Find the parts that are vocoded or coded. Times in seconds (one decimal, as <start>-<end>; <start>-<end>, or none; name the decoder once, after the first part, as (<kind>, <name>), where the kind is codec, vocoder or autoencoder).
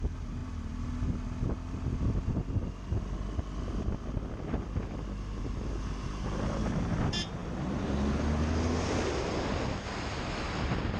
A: none